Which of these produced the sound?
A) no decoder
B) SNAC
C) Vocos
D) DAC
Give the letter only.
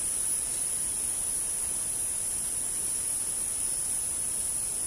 A